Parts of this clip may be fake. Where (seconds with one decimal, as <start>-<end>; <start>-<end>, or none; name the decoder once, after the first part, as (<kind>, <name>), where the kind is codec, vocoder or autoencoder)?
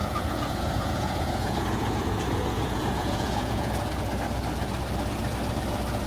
0.0-3.7 (vocoder, Vocos)